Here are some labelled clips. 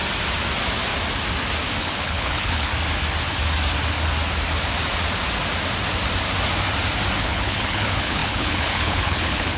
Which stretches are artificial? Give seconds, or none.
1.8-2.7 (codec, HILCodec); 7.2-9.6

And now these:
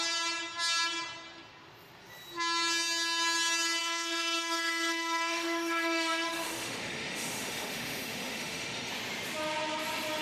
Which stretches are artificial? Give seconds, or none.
3.8-8.9 (autoencoder, DAC-VAE)

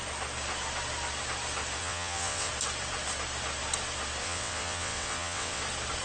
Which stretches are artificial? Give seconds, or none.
1.8-2.5 (vocoder, WaveNeXt); 4.2-5.6

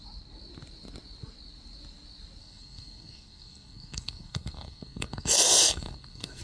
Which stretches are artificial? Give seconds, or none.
2.4-6.4 (codec, SNAC)

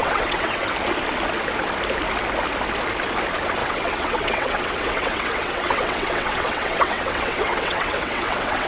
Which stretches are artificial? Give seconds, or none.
0.0-0.7 (vocoder, WaveNeXt); 3.6-8.7

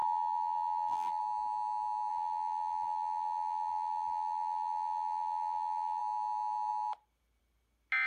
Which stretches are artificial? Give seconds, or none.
0.0-1.2 (vocoder, BigVGAN v2); 2.1-6.0

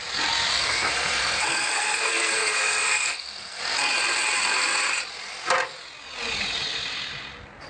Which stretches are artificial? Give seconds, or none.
0.5-3.6 (codec, SNAC)